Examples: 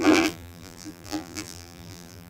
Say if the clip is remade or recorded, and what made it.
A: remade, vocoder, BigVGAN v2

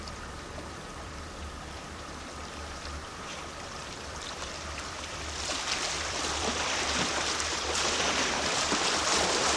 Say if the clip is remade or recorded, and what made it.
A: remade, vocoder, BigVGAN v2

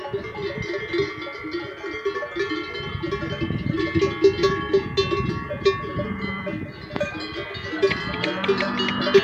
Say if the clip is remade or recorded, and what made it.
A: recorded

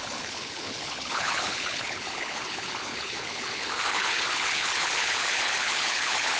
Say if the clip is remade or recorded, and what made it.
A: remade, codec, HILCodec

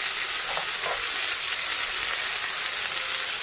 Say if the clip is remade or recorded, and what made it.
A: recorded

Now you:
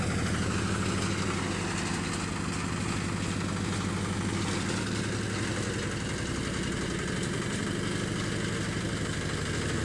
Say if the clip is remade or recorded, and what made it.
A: recorded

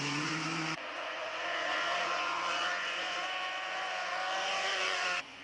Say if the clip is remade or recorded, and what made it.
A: remade, vocoder, Vocos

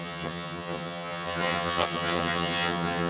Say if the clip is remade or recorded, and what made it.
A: remade, vocoder, HiFi-GAN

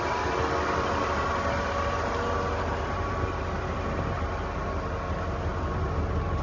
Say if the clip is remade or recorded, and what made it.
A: recorded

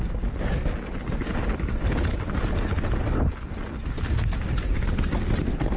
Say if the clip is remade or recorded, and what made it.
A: recorded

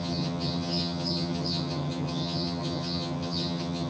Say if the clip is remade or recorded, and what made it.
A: remade, vocoder, HiFi-GAN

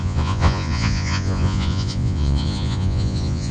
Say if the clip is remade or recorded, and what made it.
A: remade, vocoder, Vocos